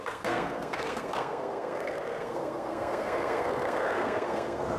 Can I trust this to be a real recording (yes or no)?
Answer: no